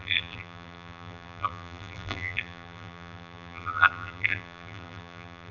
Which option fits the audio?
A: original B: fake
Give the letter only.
B